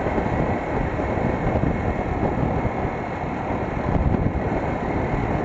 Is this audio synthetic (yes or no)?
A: no